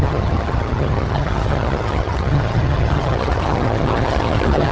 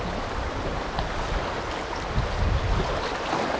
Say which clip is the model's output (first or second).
first